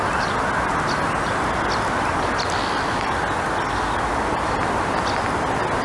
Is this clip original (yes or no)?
yes